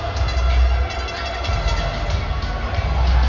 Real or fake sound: real